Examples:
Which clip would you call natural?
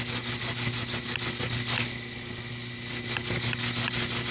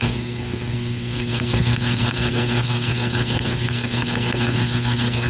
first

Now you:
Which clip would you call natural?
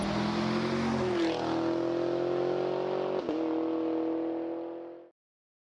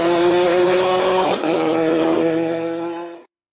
first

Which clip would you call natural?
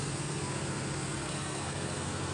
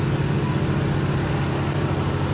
second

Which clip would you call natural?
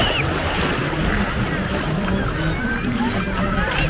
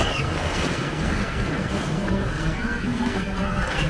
first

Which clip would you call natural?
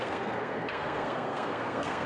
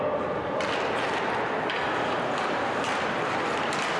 second